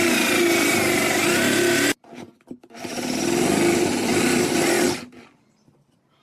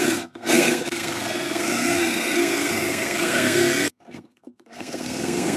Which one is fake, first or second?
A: second